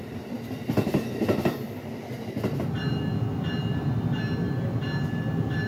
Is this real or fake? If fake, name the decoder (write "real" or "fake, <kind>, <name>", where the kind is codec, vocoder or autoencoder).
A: real